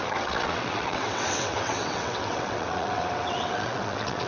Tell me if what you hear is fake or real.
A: fake